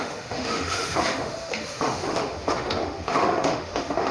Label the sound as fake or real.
fake